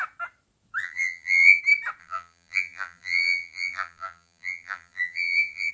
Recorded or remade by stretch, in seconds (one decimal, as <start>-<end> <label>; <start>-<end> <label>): 0.0-0.8 recorded; 0.8-1.6 remade; 1.6-2.0 recorded; 2.0-5.7 remade